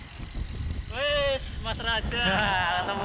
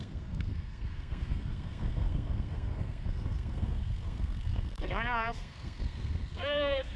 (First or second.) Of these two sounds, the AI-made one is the second